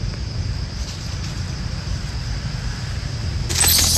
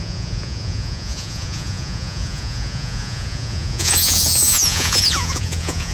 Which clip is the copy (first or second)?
second